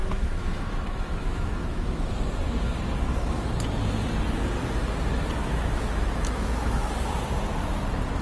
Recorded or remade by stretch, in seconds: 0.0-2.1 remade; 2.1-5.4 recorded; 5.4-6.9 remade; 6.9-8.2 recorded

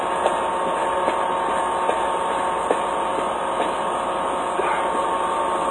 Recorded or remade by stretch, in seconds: 0.0-5.7 recorded

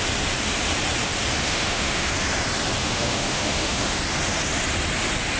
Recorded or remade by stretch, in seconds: 0.0-1.4 recorded; 1.4-2.1 remade; 2.1-2.8 recorded; 2.8-4.0 remade; 4.0-5.4 recorded

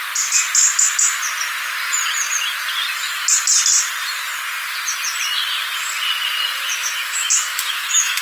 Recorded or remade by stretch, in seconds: 0.0-6.8 recorded; 6.8-8.2 remade

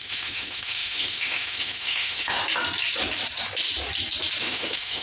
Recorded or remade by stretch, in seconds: 0.0-2.4 remade; 2.4-4.4 recorded; 4.4-5.0 remade